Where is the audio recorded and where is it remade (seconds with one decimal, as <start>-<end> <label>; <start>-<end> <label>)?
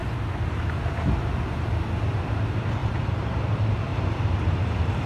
0.0-0.6 remade; 0.6-2.8 recorded; 2.8-3.4 remade; 3.4-3.9 recorded; 3.9-5.1 remade